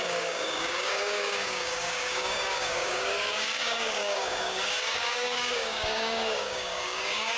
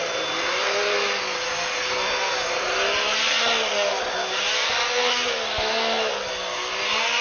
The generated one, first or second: first